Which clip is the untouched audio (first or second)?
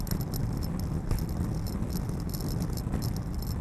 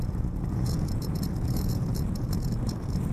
first